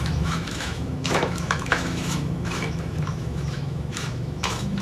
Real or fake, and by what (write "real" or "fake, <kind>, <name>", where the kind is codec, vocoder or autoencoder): fake, autoencoder, DAC-VAE